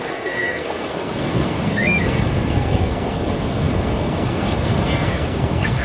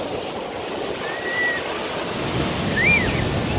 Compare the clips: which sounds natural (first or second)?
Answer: second